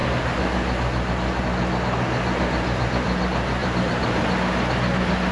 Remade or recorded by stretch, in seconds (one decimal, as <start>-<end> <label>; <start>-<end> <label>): 0.0-3.6 recorded; 3.6-4.2 remade; 4.2-5.3 recorded